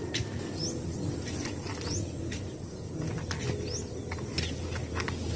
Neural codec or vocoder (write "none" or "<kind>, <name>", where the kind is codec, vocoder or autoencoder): none